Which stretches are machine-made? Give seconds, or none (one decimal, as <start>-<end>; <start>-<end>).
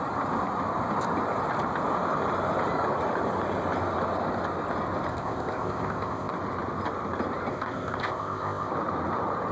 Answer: 5.1-6.3; 7.5-8.7